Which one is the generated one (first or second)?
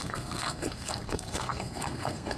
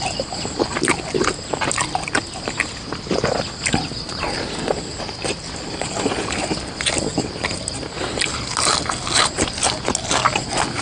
first